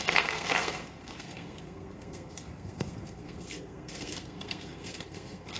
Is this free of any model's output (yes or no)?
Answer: no